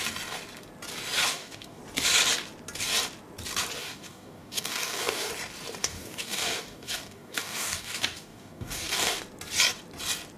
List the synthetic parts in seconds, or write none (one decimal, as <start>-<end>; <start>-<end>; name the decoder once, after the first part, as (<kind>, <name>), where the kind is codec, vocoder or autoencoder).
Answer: 1.3-1.8 (codec, DAC); 3.8-5.3; 5.8-9.2